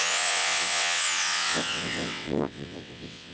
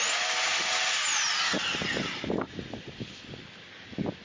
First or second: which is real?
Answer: second